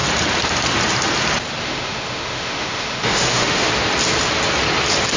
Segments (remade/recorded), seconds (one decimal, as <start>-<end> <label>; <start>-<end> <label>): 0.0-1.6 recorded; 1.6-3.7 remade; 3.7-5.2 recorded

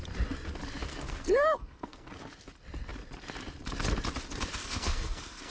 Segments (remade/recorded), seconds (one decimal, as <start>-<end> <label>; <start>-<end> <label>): 0.0-0.9 recorded; 0.9-2.1 remade; 2.1-4.6 recorded; 4.6-5.5 remade

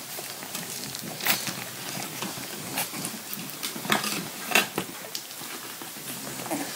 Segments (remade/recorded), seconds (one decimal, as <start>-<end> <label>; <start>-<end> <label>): 0.0-4.6 recorded; 4.6-5.3 remade; 5.3-6.8 recorded